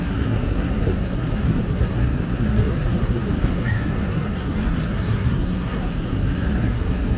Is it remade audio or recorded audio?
remade